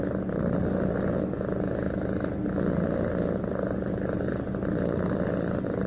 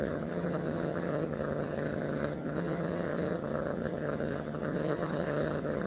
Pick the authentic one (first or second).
first